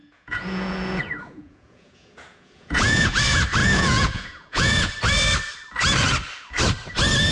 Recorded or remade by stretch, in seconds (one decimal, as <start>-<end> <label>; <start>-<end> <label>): 0.0-3.2 remade; 3.2-3.6 recorded; 3.6-4.9 remade; 4.9-7.3 recorded